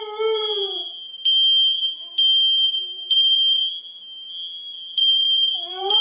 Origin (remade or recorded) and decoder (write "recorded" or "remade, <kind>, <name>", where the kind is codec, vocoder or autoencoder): remade, vocoder, BigVGAN v2